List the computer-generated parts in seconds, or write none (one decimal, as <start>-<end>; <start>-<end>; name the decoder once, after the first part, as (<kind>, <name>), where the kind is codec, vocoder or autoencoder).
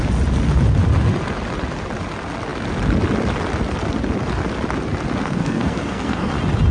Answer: 5.2-6.3 (codec, SNAC)